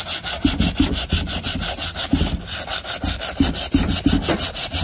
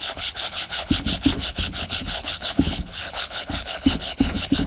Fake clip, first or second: second